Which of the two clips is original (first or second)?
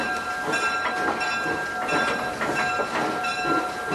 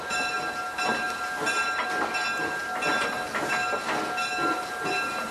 second